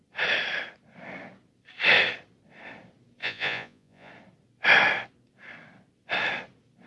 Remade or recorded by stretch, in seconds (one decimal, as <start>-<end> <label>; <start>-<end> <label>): 0.0-3.2 recorded; 3.2-4.1 remade; 4.1-6.9 recorded